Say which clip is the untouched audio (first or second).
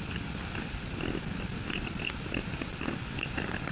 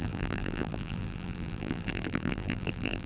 first